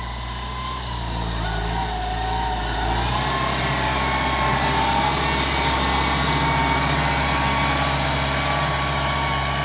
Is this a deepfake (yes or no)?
no